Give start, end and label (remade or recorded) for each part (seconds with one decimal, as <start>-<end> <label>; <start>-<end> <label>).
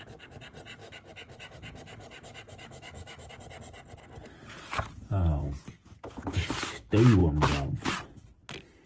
0.0-0.8 recorded; 0.8-3.3 remade; 3.3-8.9 recorded